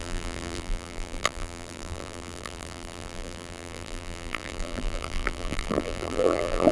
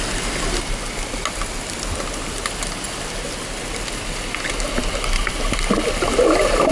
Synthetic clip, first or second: first